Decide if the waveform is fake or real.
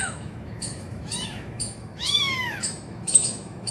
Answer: fake